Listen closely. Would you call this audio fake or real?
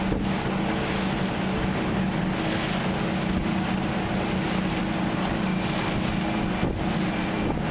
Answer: real